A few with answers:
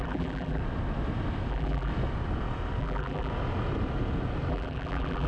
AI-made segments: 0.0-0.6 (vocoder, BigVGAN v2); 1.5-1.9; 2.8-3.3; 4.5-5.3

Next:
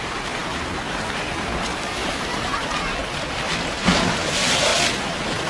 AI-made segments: 0.0-3.0 (vocoder, BigVGAN v2); 3.7-4.7

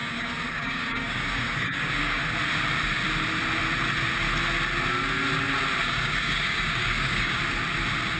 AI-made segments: 0.0-2.2 (codec, DAC); 5.8-7.4

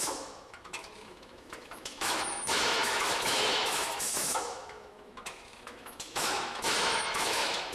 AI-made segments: 0.0-7.7 (autoencoder, DAC-VAE)

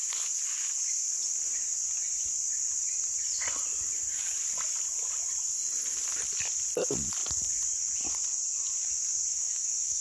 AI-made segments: 9.3-10.0 (autoencoder, DAC-VAE)

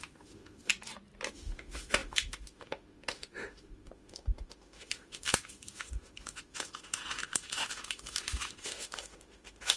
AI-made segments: 0.0-0.7 (autoencoder, DAC-VAE); 1.3-9.8